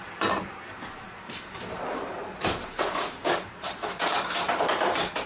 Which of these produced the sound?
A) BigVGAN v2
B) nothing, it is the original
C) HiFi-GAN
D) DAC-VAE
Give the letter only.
A